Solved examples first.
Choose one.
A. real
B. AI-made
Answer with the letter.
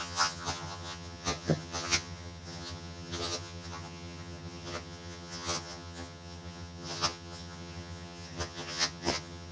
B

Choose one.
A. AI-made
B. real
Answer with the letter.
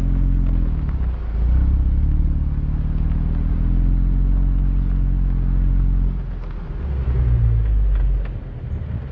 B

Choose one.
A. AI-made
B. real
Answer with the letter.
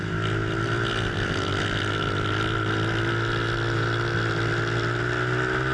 B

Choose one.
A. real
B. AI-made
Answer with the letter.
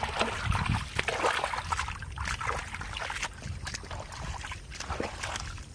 A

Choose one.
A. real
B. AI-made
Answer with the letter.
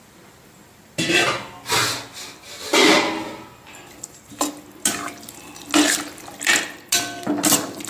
A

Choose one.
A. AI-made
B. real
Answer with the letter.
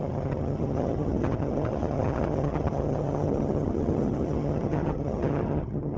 A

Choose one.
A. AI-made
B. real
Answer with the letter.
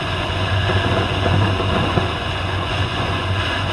A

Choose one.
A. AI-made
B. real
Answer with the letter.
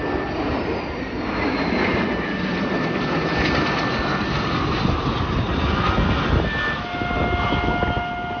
B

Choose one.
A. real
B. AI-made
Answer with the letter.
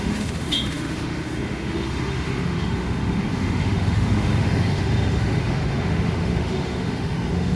B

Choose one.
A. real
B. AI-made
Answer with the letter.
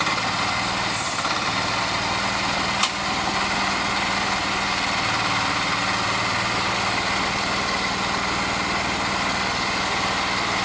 A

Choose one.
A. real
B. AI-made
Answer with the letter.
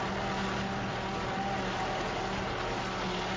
A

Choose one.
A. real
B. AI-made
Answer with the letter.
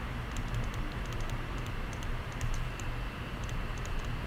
A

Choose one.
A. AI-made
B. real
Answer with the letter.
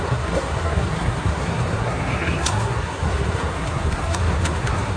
A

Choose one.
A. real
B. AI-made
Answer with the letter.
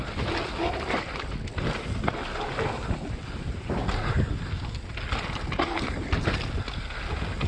A